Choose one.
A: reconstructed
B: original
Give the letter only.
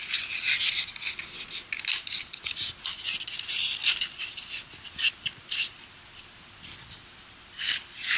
B